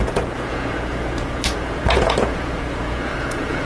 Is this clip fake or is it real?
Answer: fake